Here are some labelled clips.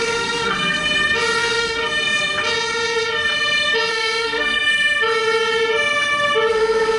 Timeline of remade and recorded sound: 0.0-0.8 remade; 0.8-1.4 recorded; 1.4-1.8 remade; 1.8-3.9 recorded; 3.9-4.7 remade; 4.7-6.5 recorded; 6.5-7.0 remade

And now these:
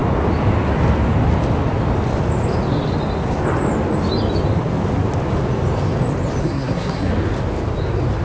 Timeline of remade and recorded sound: 0.0-6.4 recorded; 6.4-7.1 remade; 7.1-8.2 recorded